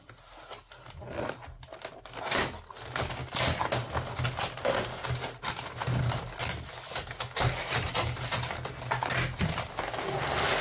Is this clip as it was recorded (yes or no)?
yes